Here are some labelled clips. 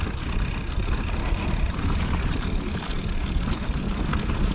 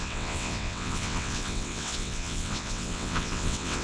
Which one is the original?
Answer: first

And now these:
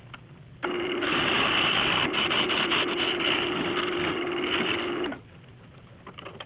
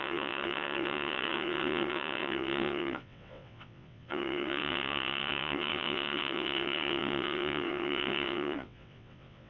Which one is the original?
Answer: first